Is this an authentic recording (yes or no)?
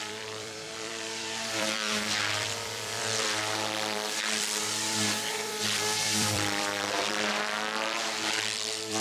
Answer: no